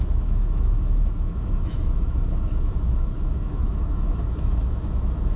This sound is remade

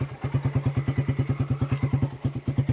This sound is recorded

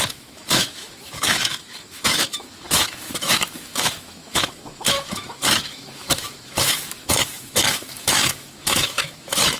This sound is remade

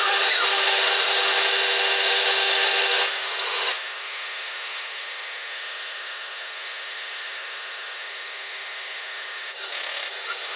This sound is remade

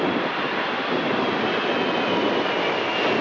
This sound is recorded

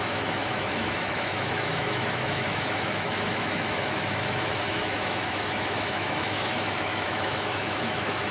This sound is remade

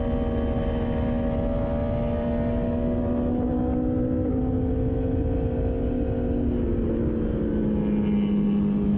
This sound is recorded